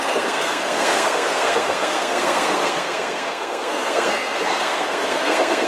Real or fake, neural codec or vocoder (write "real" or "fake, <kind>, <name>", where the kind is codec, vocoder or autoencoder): fake, codec, SNAC